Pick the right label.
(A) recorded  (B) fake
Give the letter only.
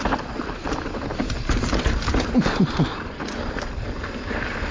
B